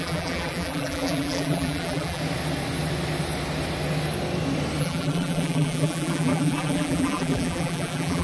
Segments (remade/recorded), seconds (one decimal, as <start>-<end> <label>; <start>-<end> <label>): 0.0-2.2 remade; 2.2-4.8 recorded; 4.8-8.2 remade